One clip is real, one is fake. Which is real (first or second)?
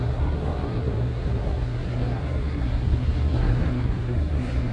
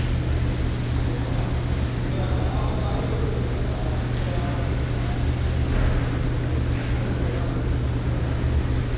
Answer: second